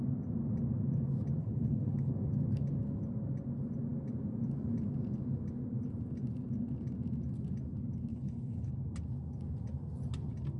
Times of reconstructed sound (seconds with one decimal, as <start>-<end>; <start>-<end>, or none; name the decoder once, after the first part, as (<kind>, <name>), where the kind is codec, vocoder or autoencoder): 1.4-2.1 (codec, HILCodec); 8.1-8.7

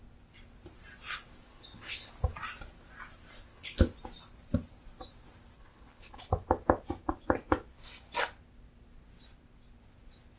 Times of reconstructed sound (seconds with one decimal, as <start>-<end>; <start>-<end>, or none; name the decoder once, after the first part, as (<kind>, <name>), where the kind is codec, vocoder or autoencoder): 1.5-2.1 (codec, HILCodec); 3.5-4.0; 5.6-6.2

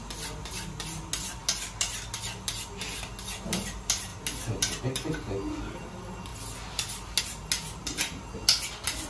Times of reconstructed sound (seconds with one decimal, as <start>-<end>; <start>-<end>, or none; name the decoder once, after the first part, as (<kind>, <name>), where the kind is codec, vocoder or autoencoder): none

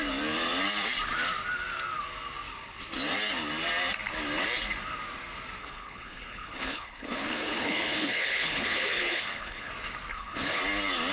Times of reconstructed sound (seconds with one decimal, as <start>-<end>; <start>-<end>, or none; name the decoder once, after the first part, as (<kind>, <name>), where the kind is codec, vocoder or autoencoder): 5.6-9.7 (codec, HILCodec); 10.1-10.6

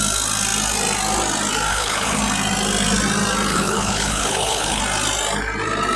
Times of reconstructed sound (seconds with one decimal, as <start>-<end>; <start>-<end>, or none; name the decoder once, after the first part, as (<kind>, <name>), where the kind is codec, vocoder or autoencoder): 1.7-2.2 (codec, HILCodec); 3.5-4.8

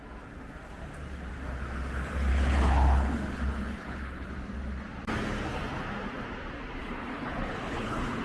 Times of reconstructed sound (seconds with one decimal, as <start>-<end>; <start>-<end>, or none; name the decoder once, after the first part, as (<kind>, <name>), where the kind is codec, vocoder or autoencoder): 2.3-4.3 (codec, HILCodec); 6.8-8.2